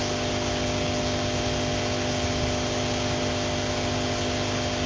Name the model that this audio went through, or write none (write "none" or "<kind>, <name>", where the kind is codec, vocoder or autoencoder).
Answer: none